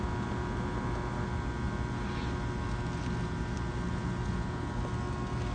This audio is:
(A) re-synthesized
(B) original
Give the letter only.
B